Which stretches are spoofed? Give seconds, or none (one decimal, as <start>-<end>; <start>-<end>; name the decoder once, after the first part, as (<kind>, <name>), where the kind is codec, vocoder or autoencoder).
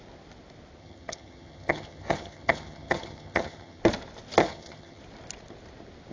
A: 0.8-3.8 (vocoder, HiFi-GAN); 4.4-5.0